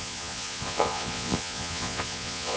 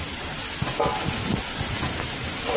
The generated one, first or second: first